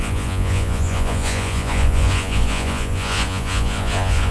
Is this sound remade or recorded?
remade